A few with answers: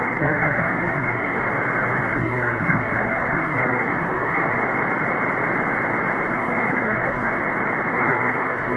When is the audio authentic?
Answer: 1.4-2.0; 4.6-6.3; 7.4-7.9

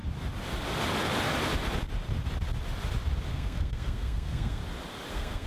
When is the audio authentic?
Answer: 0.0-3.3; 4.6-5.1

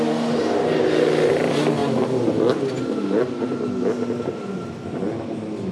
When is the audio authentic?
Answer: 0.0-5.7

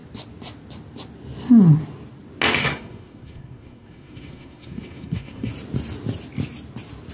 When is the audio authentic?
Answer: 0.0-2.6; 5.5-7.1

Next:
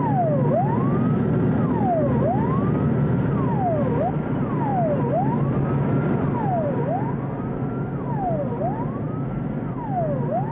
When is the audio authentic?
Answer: 0.0-10.5

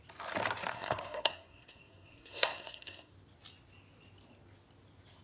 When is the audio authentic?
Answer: 0.0-0.7; 3.1-5.2

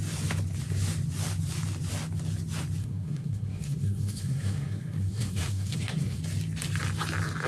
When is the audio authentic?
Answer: 0.0-2.8; 6.2-7.5